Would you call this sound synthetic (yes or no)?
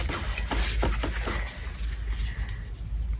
no